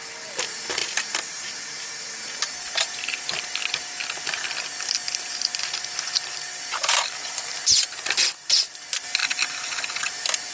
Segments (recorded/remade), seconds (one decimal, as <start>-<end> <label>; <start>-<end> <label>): 0.0-0.8 recorded; 0.8-2.2 remade; 2.2-6.8 recorded; 6.8-7.6 remade; 7.6-9.2 recorded; 9.2-10.0 remade; 10.0-10.5 recorded

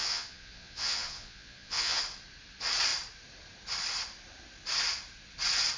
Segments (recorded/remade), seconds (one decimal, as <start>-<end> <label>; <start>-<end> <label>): 0.0-2.0 remade; 2.0-5.8 recorded

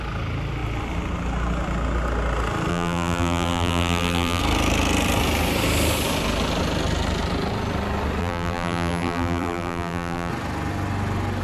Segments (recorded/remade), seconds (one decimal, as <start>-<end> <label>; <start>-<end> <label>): 0.0-2.7 recorded; 2.7-4.4 remade; 4.4-8.2 recorded; 8.2-10.3 remade; 10.3-11.4 recorded

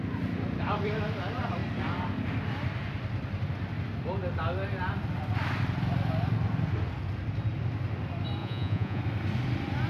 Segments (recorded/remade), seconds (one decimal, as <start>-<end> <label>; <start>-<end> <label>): 0.0-8.4 recorded; 8.4-9.0 remade; 9.0-9.9 recorded

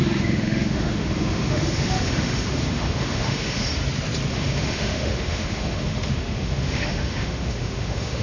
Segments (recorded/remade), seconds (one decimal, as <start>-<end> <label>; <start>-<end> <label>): 0.0-3.7 remade; 3.7-4.3 recorded; 4.3-8.2 remade

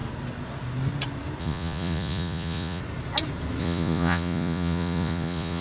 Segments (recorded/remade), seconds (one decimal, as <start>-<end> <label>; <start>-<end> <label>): 0.0-1.4 recorded; 1.4-2.8 remade; 2.8-3.6 recorded; 3.6-5.6 remade